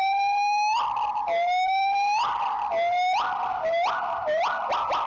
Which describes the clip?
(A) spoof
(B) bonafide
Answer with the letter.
B